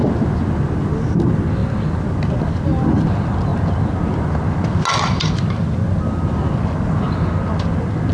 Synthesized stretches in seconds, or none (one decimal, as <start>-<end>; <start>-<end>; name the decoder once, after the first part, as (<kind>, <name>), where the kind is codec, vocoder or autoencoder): none